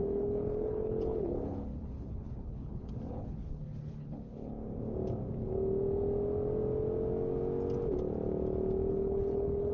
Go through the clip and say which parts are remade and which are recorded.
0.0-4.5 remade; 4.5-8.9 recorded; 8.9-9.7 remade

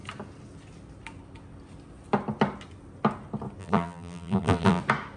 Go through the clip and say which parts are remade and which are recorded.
0.0-3.6 recorded; 3.6-4.8 remade; 4.8-5.2 recorded

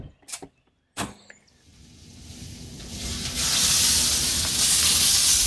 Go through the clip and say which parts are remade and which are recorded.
0.0-5.5 recorded

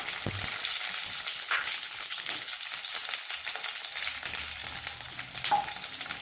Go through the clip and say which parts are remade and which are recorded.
0.0-1.3 recorded; 1.3-2.5 remade; 2.5-6.2 recorded

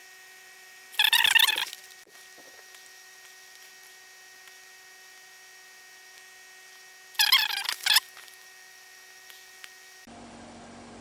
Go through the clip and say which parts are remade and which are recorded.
0.0-3.7 remade; 3.7-7.6 recorded; 7.6-11.0 remade

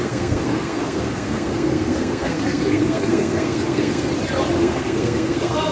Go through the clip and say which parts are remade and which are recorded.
0.0-4.1 remade; 4.1-4.6 recorded; 4.6-5.7 remade

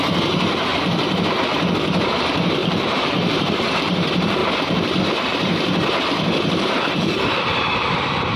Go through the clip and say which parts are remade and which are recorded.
0.0-0.7 remade; 0.7-2.0 recorded; 2.0-4.4 remade; 4.4-5.0 recorded; 5.0-8.4 remade

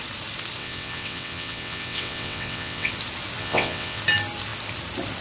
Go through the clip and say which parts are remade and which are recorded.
0.0-0.6 recorded; 0.6-2.9 remade; 2.9-3.4 recorded; 3.4-4.0 remade; 4.0-5.2 recorded